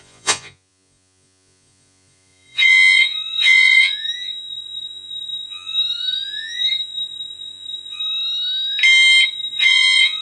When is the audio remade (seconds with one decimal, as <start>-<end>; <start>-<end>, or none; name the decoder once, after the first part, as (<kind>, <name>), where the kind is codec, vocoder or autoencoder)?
0.0-8.0 (vocoder, Vocos); 9.3-10.2